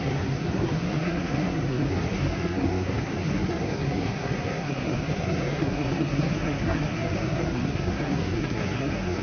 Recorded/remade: remade